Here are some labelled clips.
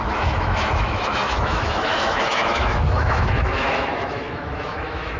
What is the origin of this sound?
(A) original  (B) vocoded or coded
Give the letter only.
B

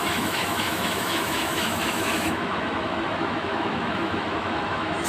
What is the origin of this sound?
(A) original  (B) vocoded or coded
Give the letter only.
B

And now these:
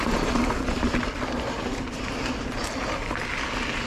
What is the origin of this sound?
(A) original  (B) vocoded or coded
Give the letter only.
A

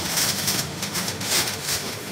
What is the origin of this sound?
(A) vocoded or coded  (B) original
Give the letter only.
A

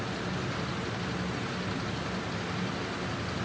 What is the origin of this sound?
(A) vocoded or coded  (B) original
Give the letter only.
B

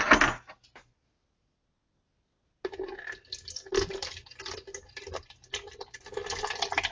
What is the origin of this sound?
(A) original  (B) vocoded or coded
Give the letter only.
A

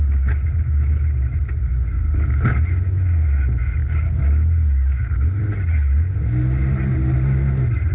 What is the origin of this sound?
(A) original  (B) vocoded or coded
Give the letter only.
A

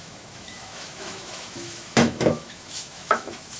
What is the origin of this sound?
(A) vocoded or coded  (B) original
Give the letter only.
A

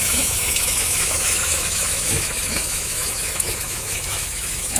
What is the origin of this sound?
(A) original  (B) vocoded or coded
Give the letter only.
B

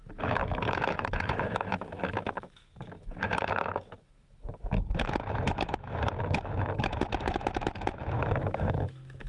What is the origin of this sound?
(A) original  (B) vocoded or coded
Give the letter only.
B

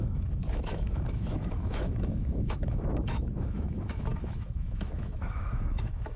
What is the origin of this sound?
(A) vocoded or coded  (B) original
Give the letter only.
A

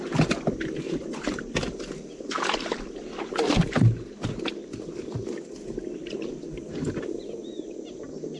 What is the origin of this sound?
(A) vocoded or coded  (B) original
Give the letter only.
B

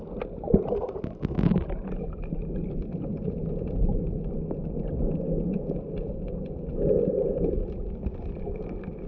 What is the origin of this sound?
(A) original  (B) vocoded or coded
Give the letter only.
A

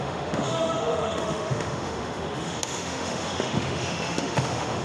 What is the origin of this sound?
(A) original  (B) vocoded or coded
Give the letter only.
B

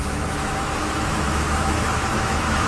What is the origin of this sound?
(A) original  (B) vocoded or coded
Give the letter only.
B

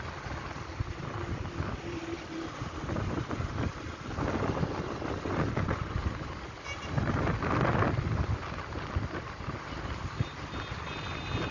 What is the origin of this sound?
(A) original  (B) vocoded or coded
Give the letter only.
A